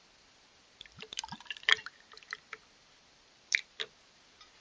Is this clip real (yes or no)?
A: no